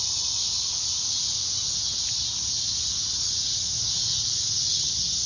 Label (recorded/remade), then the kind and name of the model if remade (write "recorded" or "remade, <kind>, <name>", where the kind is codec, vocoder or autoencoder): recorded